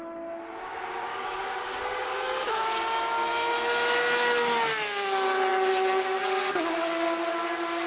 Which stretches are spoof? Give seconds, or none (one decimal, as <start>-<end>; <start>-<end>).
1.1-2.5